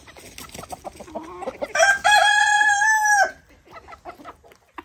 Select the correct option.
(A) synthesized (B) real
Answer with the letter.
B